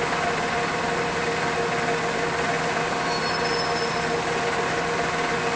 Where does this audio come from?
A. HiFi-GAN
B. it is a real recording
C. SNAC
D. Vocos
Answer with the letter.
B